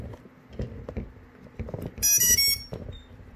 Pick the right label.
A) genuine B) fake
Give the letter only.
A